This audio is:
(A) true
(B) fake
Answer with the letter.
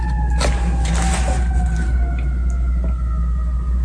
A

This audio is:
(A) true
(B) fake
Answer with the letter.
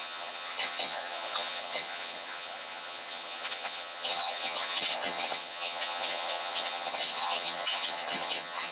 B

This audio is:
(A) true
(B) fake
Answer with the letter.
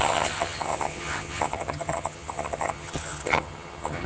B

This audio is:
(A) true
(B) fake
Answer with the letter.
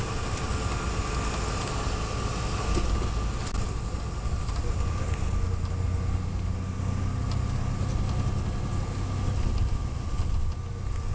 A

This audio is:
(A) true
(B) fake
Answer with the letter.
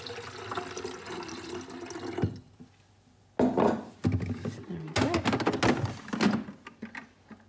A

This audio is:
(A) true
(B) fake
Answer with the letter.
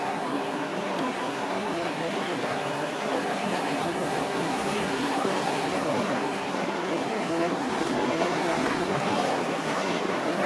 B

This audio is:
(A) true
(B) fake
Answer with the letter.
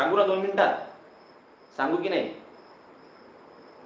A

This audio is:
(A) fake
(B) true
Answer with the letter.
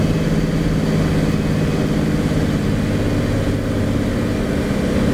B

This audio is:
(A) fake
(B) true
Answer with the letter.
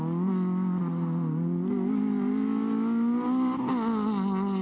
B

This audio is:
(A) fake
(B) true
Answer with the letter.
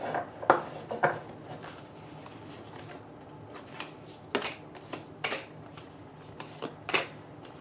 B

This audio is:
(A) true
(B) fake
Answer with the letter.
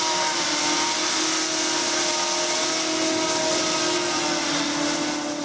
A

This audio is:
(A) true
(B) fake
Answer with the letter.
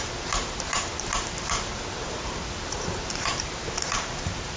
B